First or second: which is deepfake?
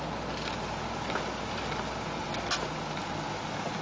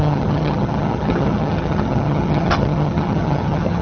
second